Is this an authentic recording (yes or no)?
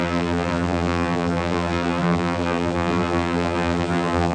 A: no